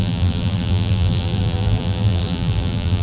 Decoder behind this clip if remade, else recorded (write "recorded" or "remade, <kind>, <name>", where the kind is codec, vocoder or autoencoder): remade, vocoder, BigVGAN v2